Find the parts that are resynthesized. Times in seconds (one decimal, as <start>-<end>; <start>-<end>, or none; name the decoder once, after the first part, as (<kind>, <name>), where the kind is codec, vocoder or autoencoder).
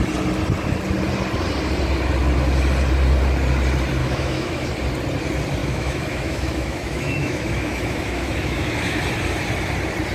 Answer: 4.0-4.7 (autoencoder, DAC-VAE); 5.6-9.0